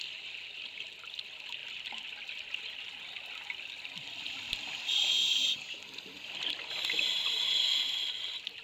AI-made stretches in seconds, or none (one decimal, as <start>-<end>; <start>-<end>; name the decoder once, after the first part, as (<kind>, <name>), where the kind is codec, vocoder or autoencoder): none